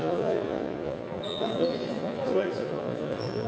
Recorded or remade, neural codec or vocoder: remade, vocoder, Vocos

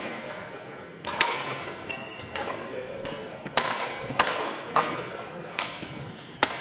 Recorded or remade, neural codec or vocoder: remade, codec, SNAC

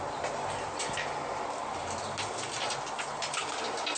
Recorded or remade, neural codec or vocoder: recorded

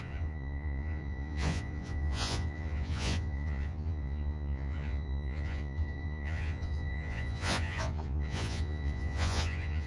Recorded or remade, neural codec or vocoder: remade, vocoder, Vocos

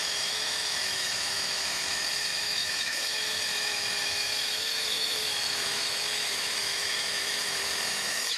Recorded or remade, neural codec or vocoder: remade, autoencoder, DAC-VAE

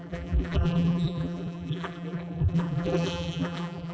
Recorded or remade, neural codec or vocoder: remade, vocoder, BigVGAN v2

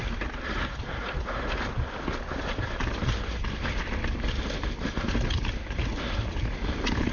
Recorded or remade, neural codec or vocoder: recorded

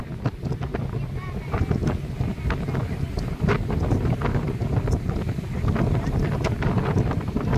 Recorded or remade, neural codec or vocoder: recorded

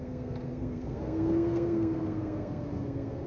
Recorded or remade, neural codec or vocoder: remade, codec, SNAC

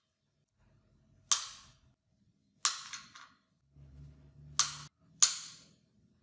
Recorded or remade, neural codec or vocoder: recorded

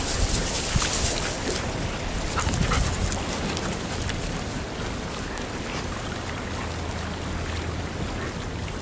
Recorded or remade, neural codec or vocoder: recorded